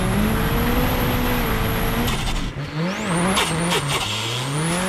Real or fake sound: real